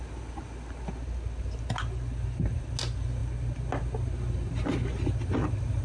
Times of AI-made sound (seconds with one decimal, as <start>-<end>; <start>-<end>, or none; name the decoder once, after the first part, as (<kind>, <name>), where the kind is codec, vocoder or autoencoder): none